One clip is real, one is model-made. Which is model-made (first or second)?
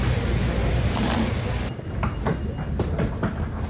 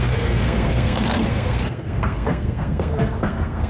second